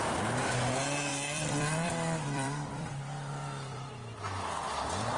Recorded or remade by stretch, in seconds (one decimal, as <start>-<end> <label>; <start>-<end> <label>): 0.0-1.1 recorded; 1.1-4.2 remade; 4.2-5.2 recorded